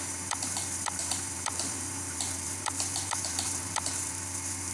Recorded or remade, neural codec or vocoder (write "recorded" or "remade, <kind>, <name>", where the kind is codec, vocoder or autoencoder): remade, vocoder, BigVGAN v2